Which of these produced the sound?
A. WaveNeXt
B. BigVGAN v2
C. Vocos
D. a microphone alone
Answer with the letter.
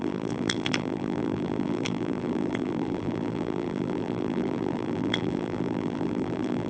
B